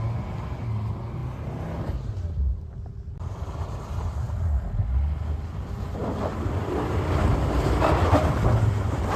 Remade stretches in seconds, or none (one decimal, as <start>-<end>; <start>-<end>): none